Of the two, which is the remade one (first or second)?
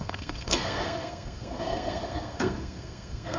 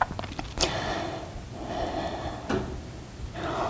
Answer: first